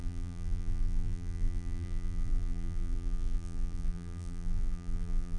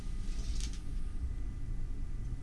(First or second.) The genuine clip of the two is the second